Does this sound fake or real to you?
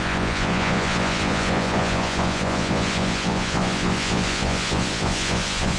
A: fake